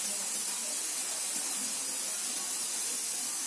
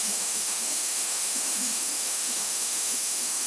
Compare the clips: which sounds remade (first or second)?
second